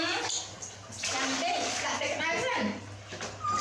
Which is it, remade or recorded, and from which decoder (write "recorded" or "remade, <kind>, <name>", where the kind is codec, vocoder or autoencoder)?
recorded